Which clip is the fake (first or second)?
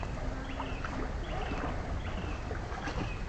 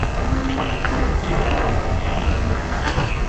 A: second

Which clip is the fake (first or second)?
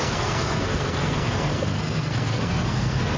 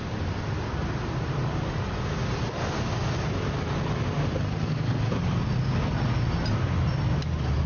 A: first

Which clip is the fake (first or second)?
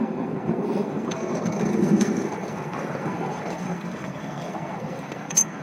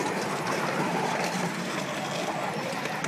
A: first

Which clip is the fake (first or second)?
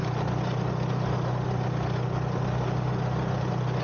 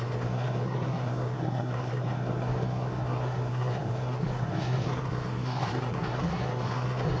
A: second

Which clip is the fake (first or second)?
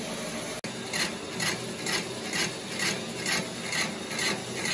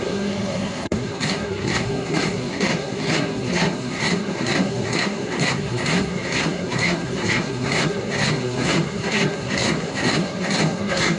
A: second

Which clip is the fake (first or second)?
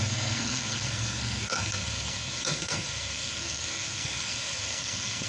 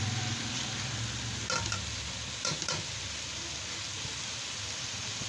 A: first